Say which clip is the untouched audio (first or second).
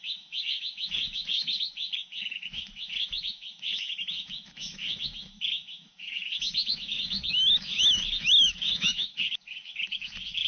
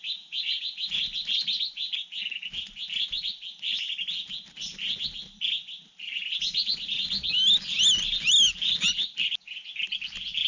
second